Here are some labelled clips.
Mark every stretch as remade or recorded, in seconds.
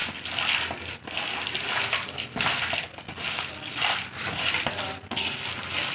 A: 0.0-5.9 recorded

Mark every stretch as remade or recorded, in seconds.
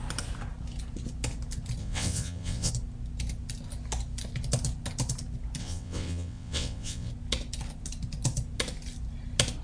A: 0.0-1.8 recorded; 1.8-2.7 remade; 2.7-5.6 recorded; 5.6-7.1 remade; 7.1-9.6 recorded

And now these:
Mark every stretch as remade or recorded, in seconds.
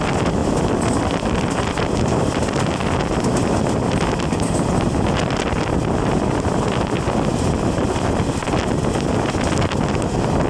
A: 0.0-10.5 recorded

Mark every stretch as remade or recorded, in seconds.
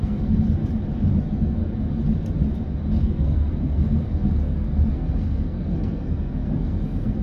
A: 0.0-0.6 remade; 0.6-1.2 recorded; 1.2-1.6 remade; 1.6-3.0 recorded; 3.0-7.2 remade